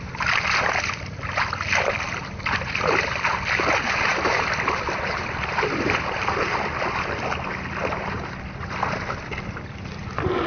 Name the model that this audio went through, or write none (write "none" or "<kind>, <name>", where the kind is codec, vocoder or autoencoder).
vocoder, BigVGAN v2